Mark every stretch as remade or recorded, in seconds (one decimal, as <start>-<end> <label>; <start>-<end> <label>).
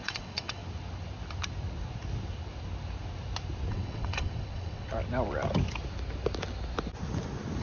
0.0-0.6 remade; 0.6-3.7 recorded; 3.7-4.9 remade; 4.9-7.6 recorded